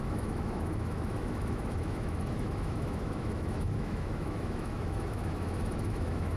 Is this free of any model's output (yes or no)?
no